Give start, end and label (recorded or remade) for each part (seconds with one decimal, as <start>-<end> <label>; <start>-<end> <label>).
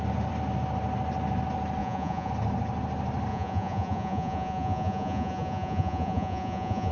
0.0-1.8 recorded; 1.8-2.3 remade; 2.3-3.3 recorded; 3.3-6.9 remade